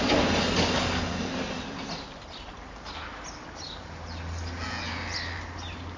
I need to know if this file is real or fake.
real